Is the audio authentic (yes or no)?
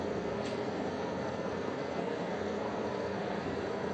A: no